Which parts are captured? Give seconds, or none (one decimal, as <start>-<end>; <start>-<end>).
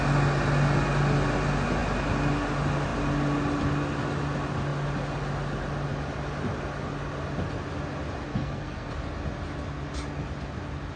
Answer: 0.0-8.3; 8.9-11.0